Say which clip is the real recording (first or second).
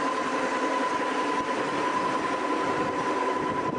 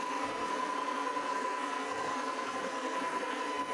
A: first